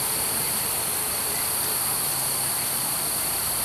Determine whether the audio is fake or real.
fake